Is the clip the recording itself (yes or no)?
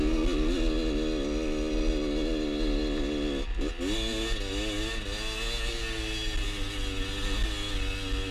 yes